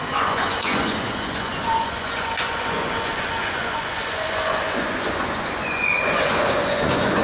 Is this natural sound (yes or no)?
no